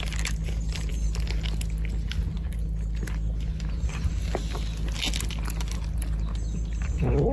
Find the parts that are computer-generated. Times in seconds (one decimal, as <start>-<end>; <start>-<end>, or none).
none